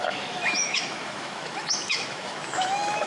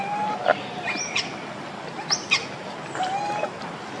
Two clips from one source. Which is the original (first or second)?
second